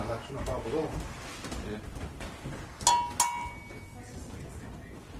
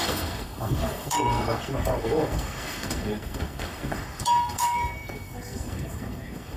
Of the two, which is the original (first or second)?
first